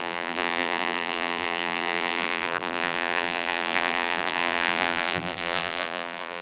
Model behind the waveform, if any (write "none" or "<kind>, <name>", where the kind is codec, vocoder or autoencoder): vocoder, BigVGAN v2